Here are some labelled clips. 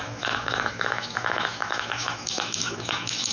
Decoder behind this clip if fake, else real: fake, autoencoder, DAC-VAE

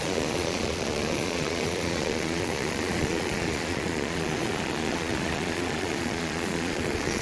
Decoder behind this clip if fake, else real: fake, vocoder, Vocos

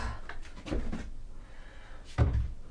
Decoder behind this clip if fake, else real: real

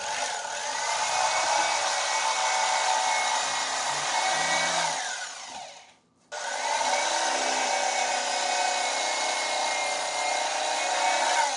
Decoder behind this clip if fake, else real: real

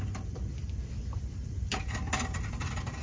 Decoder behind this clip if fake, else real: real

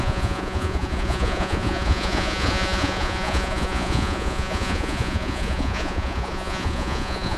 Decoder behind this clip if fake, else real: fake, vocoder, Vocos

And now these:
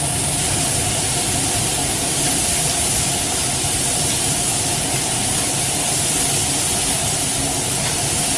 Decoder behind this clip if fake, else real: real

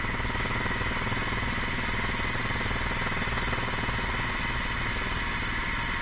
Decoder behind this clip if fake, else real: real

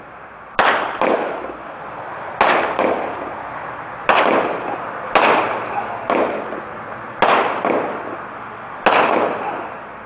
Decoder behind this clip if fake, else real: real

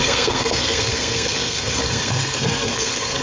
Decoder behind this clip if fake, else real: fake, codec, SNAC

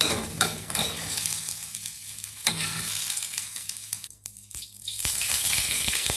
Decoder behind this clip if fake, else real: fake, codec, SNAC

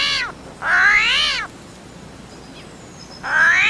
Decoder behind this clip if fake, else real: real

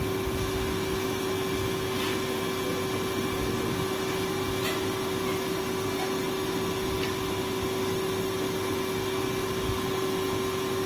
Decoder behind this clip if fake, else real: real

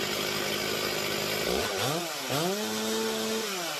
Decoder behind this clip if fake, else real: real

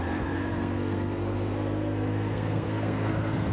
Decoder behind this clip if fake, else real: fake, codec, SNAC